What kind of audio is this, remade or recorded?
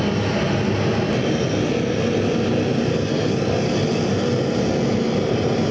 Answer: recorded